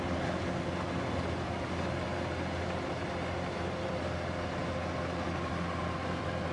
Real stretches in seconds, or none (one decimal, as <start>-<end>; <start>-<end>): 0.0-6.5